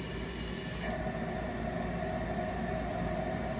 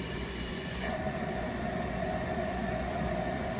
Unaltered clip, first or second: first